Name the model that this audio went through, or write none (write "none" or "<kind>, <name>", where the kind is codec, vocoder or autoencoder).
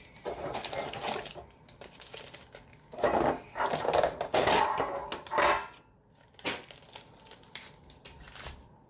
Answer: none